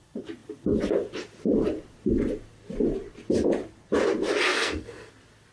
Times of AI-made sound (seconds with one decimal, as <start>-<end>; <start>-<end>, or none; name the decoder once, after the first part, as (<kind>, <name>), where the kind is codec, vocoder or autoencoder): 4.5-5.1 (codec, SNAC)